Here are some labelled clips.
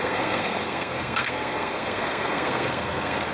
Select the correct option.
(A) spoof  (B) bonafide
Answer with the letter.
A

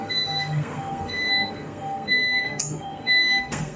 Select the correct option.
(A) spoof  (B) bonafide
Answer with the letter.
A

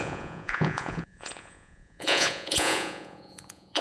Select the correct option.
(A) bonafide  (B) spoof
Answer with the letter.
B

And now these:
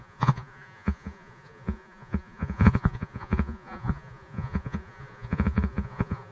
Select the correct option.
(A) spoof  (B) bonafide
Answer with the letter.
A